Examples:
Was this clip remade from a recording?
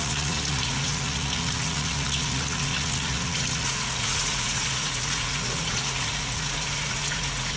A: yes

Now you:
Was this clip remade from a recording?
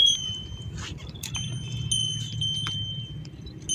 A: no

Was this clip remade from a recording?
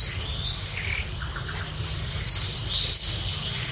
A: no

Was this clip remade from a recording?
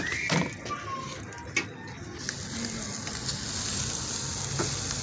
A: no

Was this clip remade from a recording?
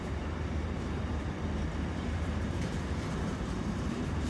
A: yes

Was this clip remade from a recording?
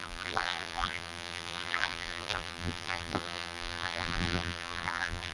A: yes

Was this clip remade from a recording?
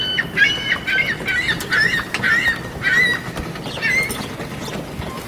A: no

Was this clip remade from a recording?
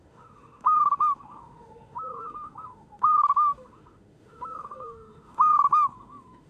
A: yes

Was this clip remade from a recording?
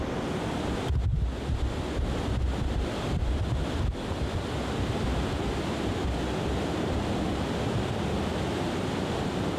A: no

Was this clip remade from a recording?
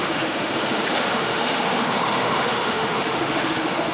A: yes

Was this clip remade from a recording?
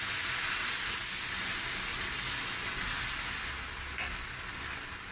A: no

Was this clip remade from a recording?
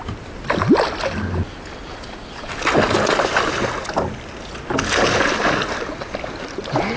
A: no